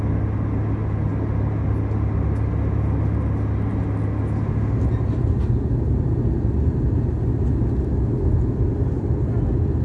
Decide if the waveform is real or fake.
real